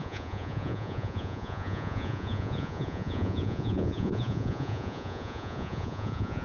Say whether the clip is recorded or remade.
remade